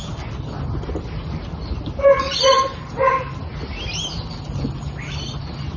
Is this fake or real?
real